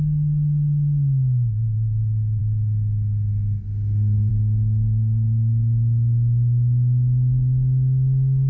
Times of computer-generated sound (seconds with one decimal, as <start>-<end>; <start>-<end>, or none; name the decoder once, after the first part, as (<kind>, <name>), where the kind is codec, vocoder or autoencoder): none